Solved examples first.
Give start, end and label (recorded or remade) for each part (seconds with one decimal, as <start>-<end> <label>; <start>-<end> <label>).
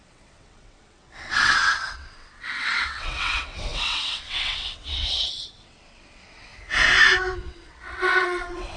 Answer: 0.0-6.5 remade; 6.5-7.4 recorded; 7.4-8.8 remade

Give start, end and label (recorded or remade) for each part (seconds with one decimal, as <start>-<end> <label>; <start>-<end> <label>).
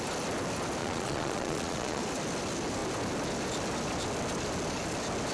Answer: 0.0-0.8 recorded; 0.8-2.0 remade; 2.0-5.3 recorded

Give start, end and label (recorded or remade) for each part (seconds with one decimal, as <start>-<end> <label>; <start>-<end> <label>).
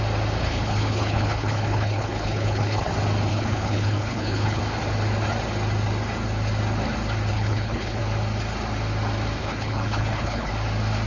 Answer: 0.0-0.4 recorded; 0.4-2.9 remade; 2.9-3.3 recorded; 3.3-4.6 remade; 4.6-7.3 recorded; 7.3-8.0 remade; 8.0-9.4 recorded; 9.4-10.5 remade; 10.5-11.1 recorded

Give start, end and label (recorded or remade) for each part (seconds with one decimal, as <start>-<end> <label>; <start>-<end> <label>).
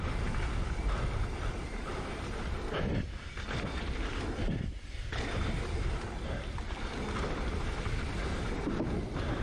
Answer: 0.0-9.4 recorded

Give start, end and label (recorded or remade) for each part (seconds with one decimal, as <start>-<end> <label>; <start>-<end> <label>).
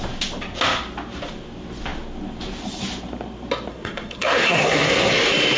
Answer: 0.0-3.7 recorded; 3.7-5.1 remade; 5.1-5.6 recorded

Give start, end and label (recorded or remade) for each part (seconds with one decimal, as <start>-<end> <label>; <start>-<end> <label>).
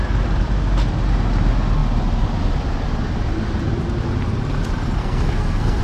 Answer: 0.0-5.0 recorded; 5.0-5.8 remade